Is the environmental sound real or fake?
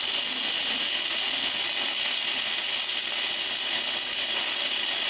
real